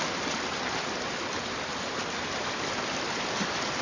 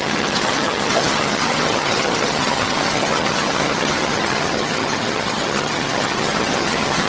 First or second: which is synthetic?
second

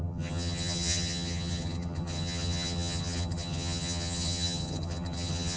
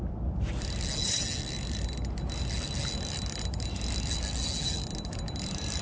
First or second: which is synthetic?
first